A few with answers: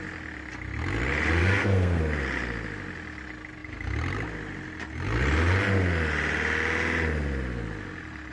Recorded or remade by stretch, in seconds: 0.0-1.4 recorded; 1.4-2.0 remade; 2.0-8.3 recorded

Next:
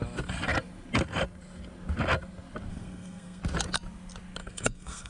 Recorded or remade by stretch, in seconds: 0.0-2.7 recorded; 2.7-3.4 remade; 3.4-4.4 recorded; 4.4-5.1 remade

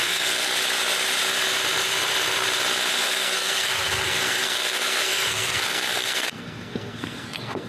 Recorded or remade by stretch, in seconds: 0.0-0.5 remade; 0.5-3.0 recorded; 3.0-7.7 remade